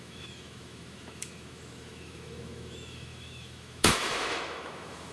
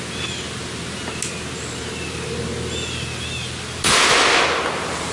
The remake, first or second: first